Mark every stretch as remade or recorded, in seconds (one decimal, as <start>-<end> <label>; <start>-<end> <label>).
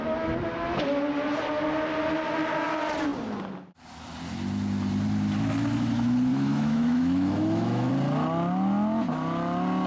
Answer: 0.0-6.3 recorded; 6.3-7.9 remade; 7.9-9.9 recorded